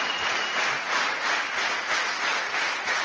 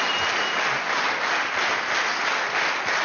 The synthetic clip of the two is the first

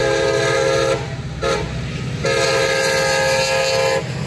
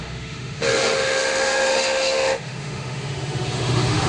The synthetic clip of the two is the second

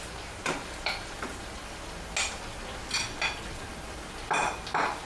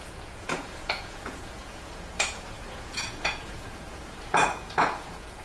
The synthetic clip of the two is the second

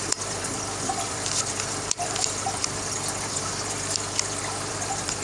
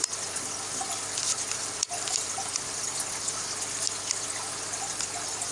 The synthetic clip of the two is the first